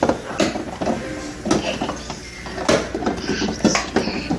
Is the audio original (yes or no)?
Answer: yes